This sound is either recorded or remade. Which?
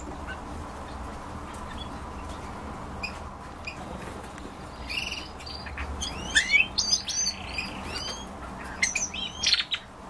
recorded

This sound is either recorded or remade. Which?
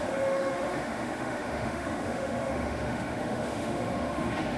remade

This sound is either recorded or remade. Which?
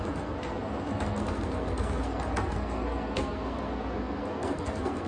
remade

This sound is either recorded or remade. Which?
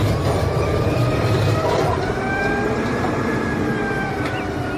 remade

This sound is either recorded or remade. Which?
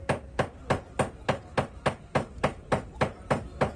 recorded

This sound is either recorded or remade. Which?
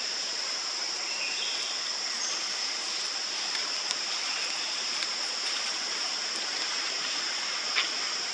recorded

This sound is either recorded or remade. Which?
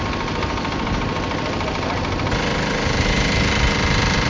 recorded